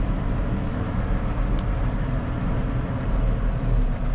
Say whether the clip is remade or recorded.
remade